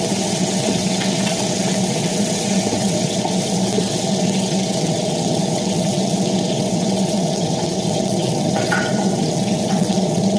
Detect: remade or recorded remade